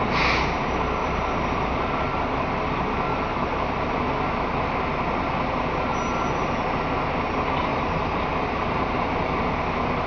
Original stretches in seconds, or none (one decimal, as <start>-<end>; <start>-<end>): 0.0-1.0; 1.8-3.1; 3.9-7.7; 9.3-10.1